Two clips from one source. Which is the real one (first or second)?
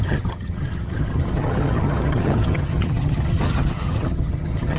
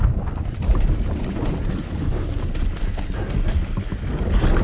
second